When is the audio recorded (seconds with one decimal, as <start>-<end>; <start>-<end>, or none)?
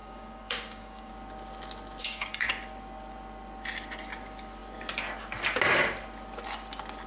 1.1-2.0; 2.5-7.1